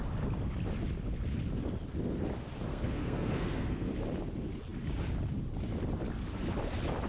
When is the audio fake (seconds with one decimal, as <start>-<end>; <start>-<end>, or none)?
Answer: 2.7-3.9